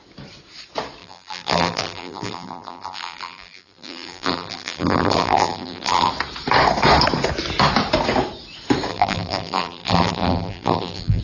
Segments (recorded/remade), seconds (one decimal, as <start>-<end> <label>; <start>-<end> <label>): 0.0-1.0 recorded; 1.0-6.1 remade; 6.1-8.9 recorded; 8.9-11.2 remade